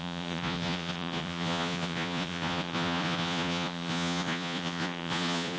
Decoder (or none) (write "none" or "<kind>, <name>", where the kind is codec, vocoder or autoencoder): vocoder, Vocos